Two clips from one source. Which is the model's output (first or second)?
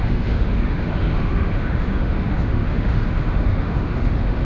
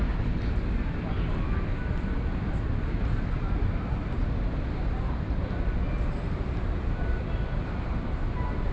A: first